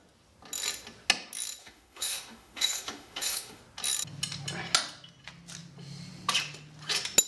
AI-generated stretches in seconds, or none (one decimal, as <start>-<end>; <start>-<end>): 1.6-3.6